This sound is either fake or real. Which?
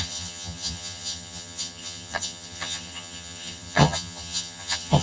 fake